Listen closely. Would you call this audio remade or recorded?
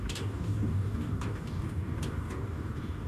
remade